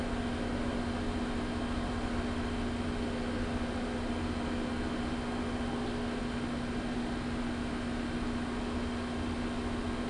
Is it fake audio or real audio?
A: real